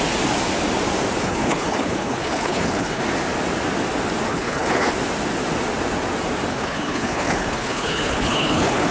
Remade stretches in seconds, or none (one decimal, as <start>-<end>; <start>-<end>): 1.2-3.0; 4.3-4.9; 6.5-8.9